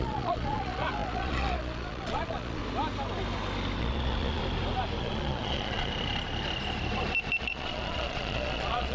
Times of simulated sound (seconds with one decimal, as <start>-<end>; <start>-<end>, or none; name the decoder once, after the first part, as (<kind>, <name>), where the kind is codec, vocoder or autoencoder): 0.0-2.6 (vocoder, Vocos); 3.8-4.4; 5.0-5.9; 7.4-8.9

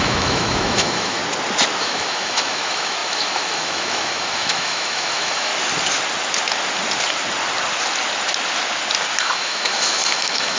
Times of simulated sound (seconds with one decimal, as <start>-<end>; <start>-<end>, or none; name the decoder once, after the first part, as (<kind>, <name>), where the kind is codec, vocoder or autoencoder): 0.0-1.2 (autoencoder, DAC-VAE); 1.8-5.5; 9.2-10.6

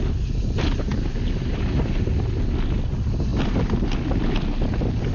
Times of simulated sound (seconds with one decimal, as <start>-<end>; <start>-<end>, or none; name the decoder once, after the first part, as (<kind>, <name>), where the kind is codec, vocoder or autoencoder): none

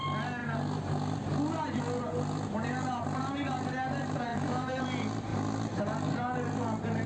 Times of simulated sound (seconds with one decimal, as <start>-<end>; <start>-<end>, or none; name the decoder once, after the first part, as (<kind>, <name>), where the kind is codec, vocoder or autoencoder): 4.3-4.8 (autoencoder, DAC-VAE)

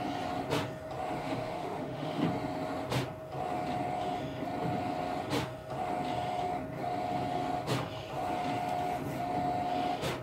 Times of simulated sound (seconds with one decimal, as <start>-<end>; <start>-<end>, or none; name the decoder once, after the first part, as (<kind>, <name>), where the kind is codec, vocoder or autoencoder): 1.2-2.2 (autoencoder, DAC-VAE)

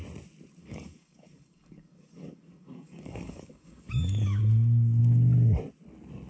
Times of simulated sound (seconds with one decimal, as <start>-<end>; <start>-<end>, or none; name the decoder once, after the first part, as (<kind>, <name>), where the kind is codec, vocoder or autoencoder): 0.6-4.4 (codec, DAC)

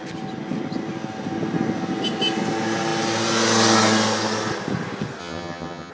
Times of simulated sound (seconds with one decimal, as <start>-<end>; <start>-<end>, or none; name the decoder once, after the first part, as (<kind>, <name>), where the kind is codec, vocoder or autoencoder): 5.2-5.9 (vocoder, HiFi-GAN)

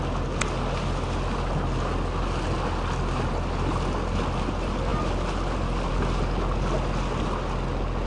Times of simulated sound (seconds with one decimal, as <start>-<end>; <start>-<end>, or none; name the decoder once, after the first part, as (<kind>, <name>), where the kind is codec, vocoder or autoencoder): none